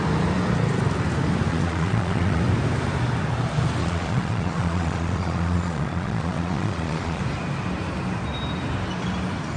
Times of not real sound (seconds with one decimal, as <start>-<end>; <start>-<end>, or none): 1.5-2.4; 3.8-7.2